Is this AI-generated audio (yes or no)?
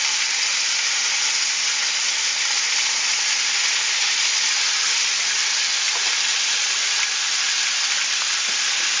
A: no